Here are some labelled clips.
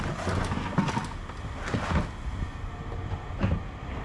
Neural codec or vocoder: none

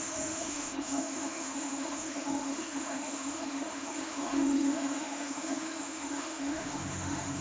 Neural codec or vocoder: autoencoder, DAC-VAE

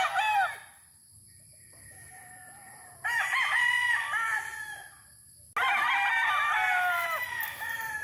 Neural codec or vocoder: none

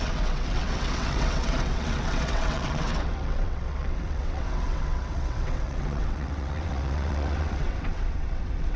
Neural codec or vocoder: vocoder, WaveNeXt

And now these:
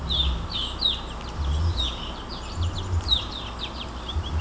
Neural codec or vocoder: none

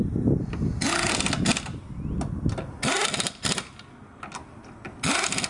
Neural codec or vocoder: none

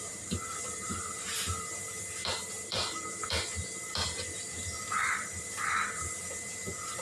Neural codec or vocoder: vocoder, BigVGAN v2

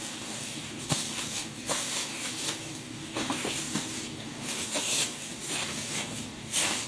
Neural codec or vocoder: codec, DAC